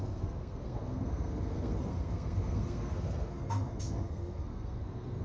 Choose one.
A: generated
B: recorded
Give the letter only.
A